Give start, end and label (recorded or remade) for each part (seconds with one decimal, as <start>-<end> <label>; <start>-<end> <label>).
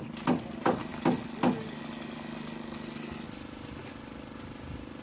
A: 0.0-5.0 recorded